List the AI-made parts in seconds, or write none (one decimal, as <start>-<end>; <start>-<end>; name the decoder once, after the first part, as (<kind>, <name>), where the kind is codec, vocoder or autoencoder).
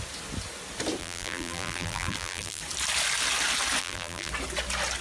1.0-2.6 (vocoder, BigVGAN v2); 3.8-4.3